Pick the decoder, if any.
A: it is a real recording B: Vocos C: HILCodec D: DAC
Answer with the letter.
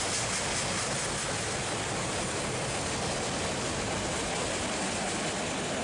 A